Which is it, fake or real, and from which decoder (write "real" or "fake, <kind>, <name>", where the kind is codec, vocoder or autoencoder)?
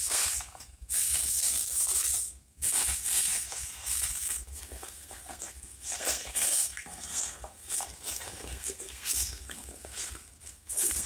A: fake, codec, SNAC